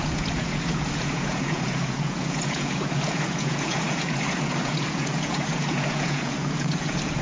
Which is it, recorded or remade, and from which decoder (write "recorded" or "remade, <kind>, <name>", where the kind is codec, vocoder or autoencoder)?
remade, vocoder, Vocos